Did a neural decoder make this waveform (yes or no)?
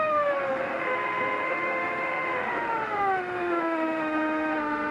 yes